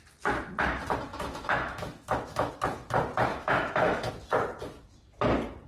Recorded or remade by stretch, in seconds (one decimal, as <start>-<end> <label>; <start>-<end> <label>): 0.0-1.1 recorded; 1.1-2.5 remade; 2.5-3.3 recorded; 3.3-4.1 remade; 4.1-5.7 recorded